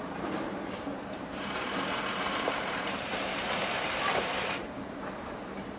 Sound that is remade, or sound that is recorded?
remade